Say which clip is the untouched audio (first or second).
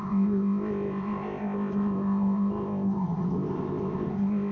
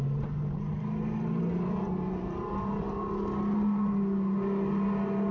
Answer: second